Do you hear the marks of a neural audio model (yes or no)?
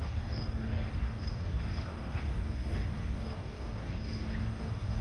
yes